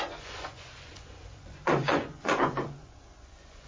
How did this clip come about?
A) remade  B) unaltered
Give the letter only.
A